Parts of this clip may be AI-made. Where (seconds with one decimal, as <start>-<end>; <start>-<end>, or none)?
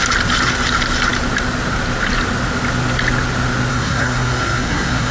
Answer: 3.7-5.1